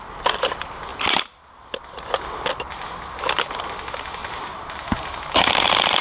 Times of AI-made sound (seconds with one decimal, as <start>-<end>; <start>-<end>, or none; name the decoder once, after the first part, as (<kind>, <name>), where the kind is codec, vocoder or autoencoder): 4.2-6.0 (vocoder, BigVGAN v2)